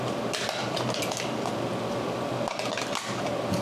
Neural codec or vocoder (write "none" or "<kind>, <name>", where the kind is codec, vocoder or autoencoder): none